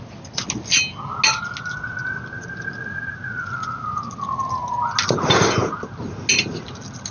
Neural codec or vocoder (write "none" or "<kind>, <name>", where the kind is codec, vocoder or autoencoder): none